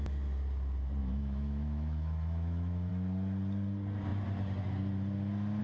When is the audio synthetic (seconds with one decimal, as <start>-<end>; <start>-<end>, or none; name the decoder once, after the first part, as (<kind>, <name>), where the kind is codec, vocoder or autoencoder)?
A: 1.0-2.9 (autoencoder, DAC-VAE)